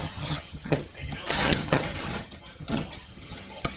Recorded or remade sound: remade